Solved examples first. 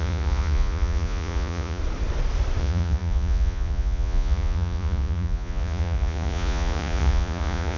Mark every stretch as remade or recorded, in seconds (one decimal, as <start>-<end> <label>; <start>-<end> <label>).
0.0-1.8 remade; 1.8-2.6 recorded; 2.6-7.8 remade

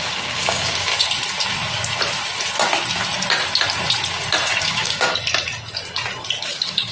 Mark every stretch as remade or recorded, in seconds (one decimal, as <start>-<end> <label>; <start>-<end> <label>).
0.0-0.9 remade; 0.9-4.6 recorded; 4.6-5.1 remade; 5.1-6.4 recorded; 6.4-6.9 remade

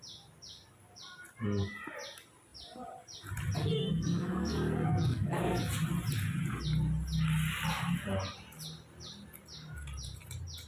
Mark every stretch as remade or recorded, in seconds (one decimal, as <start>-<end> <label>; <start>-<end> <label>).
0.0-3.6 recorded; 3.6-5.6 remade; 5.6-10.7 recorded